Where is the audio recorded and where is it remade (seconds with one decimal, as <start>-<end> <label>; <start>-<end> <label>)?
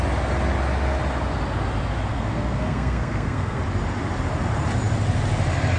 0.0-2.1 recorded; 2.1-3.6 remade; 3.6-5.8 recorded